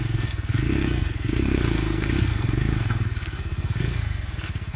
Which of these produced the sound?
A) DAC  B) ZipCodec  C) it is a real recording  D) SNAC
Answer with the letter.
D